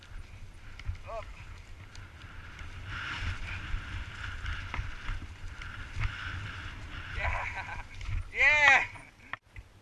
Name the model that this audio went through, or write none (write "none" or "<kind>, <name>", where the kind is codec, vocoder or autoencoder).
none